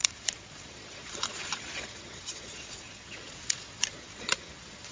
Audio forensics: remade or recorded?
remade